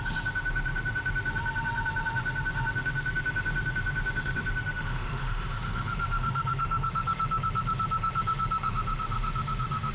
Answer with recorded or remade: remade